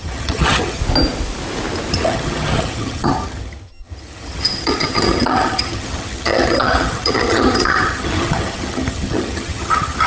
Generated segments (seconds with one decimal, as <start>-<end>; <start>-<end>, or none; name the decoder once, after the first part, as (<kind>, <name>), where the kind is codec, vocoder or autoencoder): 0.0-0.8 (vocoder, HiFi-GAN); 1.9-10.1